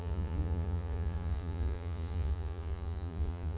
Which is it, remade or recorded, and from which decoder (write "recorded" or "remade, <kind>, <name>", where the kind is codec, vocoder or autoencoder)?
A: remade, vocoder, Vocos